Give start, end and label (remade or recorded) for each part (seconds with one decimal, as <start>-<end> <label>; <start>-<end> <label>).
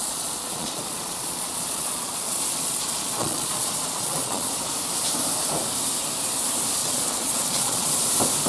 0.0-4.5 remade; 4.5-6.8 recorded; 6.8-7.9 remade; 7.9-8.5 recorded